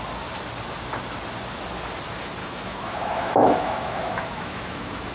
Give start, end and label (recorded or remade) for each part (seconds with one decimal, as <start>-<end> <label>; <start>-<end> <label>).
0.0-2.4 recorded; 2.4-5.1 remade